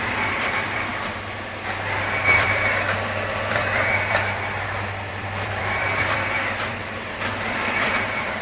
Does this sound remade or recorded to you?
remade